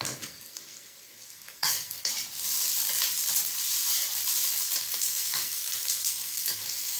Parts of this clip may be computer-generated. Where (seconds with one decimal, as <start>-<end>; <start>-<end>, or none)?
0.0-2.1; 4.8-7.0